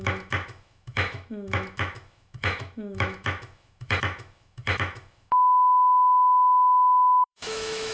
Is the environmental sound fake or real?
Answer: fake